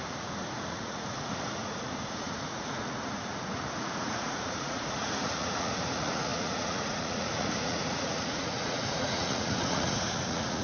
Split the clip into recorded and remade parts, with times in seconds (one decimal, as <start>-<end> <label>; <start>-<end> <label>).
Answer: 0.0-10.6 remade